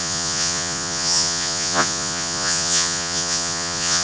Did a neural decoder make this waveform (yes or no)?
yes